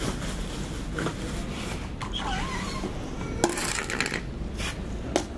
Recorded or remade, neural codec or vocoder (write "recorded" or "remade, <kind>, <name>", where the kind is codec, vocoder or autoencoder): recorded